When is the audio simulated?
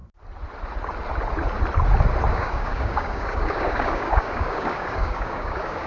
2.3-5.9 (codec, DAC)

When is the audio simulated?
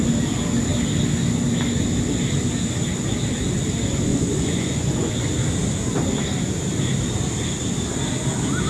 4.1-5.1 (vocoder, Vocos)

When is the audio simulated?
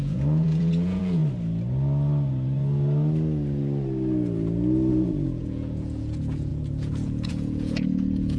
0.0-1.2 (vocoder, Vocos); 4.9-8.4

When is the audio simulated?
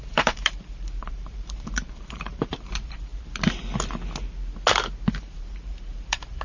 0.0-3.1 (vocoder, BigVGAN v2); 5.2-6.4